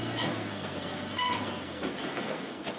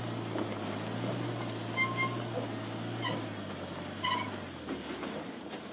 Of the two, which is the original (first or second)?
second